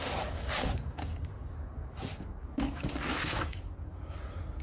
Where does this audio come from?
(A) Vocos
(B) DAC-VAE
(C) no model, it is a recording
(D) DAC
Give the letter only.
D